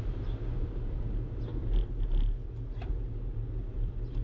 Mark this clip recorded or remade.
recorded